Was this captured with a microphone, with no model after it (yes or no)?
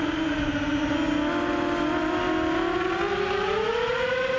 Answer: yes